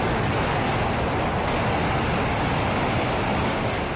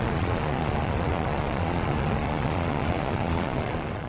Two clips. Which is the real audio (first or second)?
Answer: first